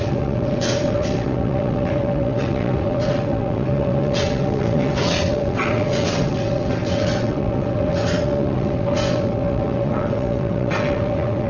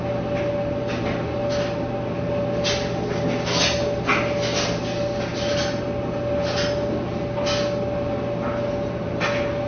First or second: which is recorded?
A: second